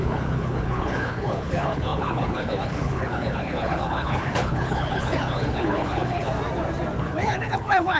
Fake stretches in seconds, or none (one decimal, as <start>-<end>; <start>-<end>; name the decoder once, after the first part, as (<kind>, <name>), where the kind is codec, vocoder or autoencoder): 0.0-6.3 (codec, HILCodec); 7.0-8.0